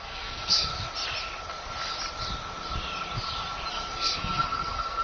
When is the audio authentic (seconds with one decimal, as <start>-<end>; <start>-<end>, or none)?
0.7-3.7